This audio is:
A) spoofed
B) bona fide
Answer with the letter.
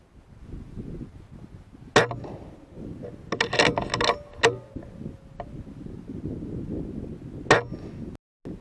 B